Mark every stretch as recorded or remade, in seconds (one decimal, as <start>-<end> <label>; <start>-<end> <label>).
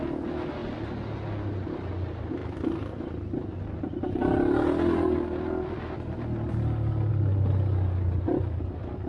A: 0.0-9.1 recorded